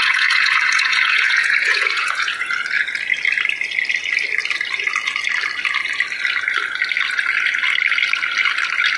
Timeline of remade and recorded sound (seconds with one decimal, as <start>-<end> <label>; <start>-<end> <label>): 0.0-2.5 remade; 2.5-9.0 recorded